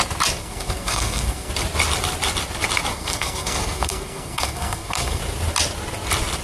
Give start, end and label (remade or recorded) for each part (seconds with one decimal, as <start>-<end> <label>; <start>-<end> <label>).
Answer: 0.0-0.4 recorded; 0.4-1.5 remade; 1.5-2.9 recorded; 2.9-5.2 remade; 5.2-6.4 recorded